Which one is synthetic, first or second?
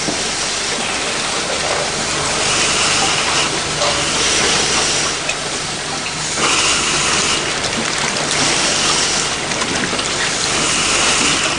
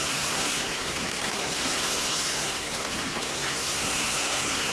second